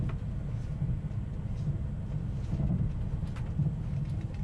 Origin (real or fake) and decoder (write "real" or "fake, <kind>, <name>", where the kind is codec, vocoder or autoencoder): real